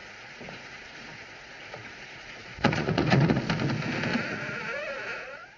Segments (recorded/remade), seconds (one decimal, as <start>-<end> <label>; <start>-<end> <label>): 0.0-3.4 remade; 3.4-4.1 recorded; 4.1-5.6 remade